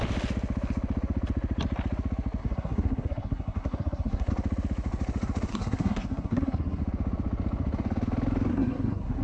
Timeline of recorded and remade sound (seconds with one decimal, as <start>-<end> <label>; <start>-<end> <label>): 0.0-2.4 recorded; 2.4-4.3 remade; 4.3-5.5 recorded; 5.5-6.8 remade; 6.8-8.5 recorded; 8.5-9.2 remade

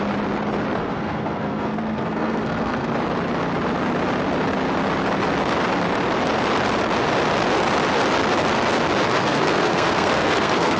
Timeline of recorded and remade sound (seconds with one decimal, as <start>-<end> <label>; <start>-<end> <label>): 0.0-0.8 recorded; 0.8-2.9 remade; 2.9-9.1 recorded; 9.1-10.8 remade

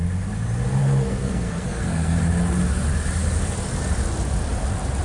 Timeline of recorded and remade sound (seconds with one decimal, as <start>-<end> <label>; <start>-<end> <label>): 0.0-0.8 recorded; 0.8-2.2 remade; 2.2-5.0 recorded

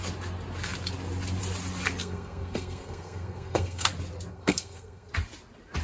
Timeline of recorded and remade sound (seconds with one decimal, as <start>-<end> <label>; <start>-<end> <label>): 0.0-2.0 recorded; 2.0-3.9 remade; 3.9-4.3 recorded; 4.3-5.1 remade; 5.1-5.8 recorded